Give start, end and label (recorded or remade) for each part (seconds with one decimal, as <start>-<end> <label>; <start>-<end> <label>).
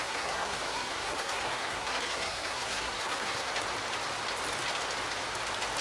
0.0-3.5 remade; 3.5-5.8 recorded